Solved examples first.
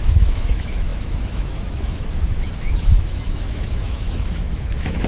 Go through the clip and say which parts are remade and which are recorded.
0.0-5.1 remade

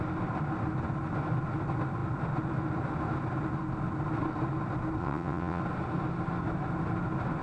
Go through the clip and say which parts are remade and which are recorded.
0.0-5.0 recorded; 5.0-5.6 remade; 5.6-7.4 recorded

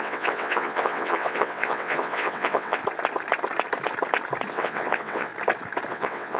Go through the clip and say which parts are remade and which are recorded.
0.0-2.8 remade; 2.8-4.5 recorded; 4.5-5.3 remade; 5.3-5.9 recorded; 5.9-6.4 remade